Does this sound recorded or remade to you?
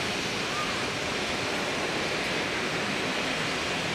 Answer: recorded